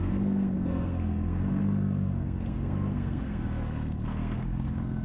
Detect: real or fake fake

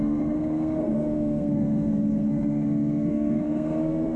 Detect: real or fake fake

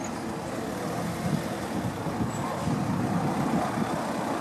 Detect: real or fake real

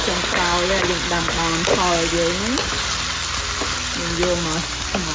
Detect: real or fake real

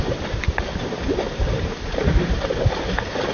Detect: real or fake real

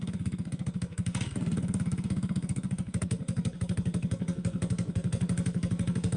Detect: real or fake fake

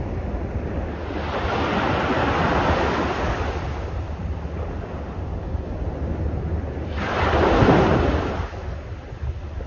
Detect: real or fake real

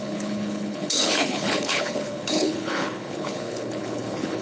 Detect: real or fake fake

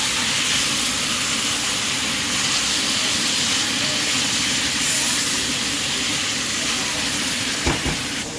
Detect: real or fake real